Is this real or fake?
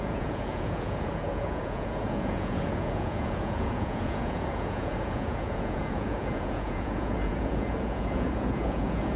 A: fake